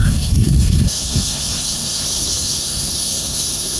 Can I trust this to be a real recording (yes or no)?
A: no